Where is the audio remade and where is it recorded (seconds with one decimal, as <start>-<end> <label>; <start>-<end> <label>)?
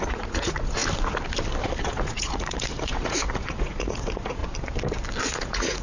0.0-0.8 remade; 0.8-1.8 recorded; 1.8-4.4 remade; 4.4-5.2 recorded; 5.2-5.8 remade